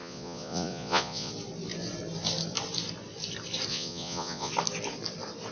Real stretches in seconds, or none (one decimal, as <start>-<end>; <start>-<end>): 1.3-3.7; 4.5-5.5